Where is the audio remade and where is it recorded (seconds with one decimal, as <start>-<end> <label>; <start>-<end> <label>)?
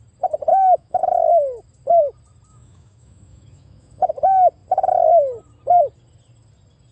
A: 0.0-0.5 recorded; 0.5-1.0 remade; 1.0-2.5 recorded; 2.5-4.1 remade; 4.1-6.9 recorded